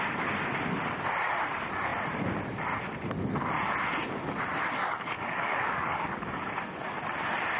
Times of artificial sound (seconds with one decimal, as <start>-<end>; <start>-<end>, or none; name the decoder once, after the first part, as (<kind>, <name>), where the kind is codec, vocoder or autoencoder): 4.8-6.4 (codec, DAC)

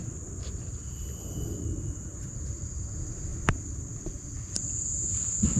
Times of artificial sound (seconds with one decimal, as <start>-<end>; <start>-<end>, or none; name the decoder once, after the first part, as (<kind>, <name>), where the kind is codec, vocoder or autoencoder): 2.1-2.8 (vocoder, BigVGAN v2)